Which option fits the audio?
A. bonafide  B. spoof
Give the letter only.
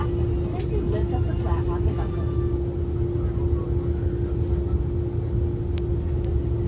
A